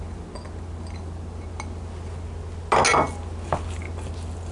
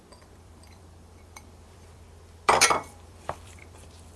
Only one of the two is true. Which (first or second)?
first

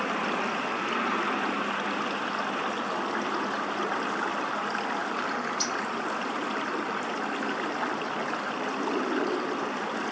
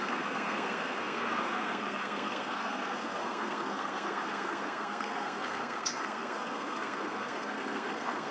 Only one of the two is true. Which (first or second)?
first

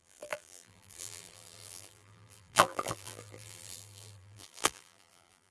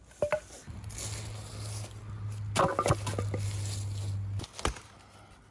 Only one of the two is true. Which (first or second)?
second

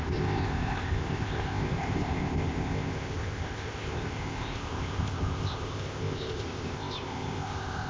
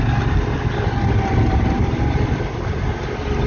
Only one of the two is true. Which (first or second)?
second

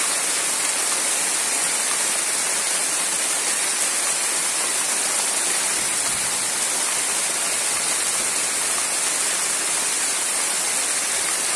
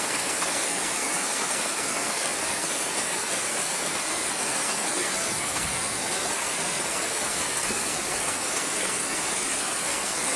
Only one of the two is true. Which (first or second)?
first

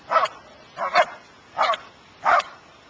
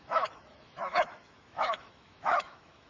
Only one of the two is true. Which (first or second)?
first